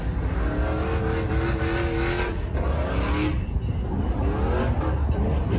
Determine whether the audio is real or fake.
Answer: real